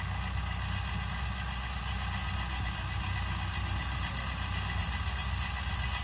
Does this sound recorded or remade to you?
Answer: recorded